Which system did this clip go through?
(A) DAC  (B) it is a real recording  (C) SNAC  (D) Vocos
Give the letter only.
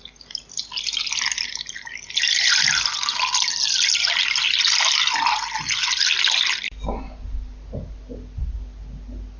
B